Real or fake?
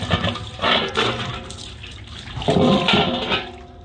real